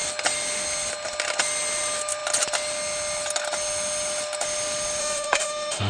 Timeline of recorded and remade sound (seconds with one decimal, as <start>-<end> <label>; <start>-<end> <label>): 0.0-5.0 recorded; 5.0-5.9 remade